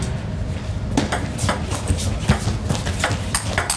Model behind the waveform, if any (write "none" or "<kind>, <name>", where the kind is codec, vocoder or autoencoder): none